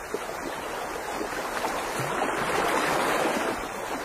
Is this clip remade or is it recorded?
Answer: recorded